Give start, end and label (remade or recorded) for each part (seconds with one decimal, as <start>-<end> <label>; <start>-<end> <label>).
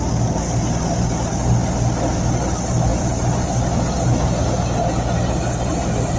0.0-6.2 recorded